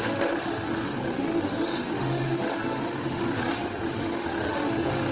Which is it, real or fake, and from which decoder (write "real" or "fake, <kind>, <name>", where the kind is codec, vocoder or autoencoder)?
fake, autoencoder, DAC-VAE